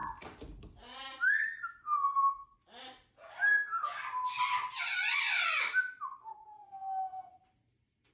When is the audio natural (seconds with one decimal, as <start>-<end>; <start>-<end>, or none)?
0.0-8.1